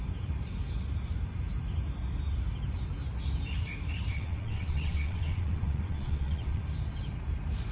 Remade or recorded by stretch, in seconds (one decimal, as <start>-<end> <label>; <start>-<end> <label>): 0.0-4.1 recorded; 4.1-6.6 remade; 6.6-7.7 recorded